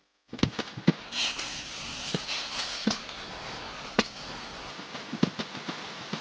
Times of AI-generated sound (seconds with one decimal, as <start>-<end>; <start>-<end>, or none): 1.0-4.7